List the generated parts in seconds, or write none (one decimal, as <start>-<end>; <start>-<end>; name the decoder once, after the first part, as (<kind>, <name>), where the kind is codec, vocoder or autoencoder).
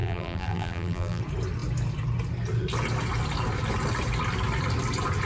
0.0-1.2 (vocoder, BigVGAN v2)